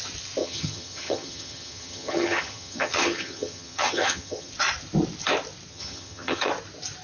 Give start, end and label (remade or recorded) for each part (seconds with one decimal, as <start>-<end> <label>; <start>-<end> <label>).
0.0-0.4 recorded; 0.4-4.5 remade; 4.5-5.7 recorded; 5.7-6.5 remade; 6.5-7.0 recorded